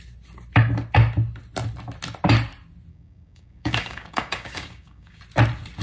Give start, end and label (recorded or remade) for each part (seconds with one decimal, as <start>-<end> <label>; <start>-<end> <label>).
0.0-2.9 recorded; 2.9-5.2 remade; 5.2-5.8 recorded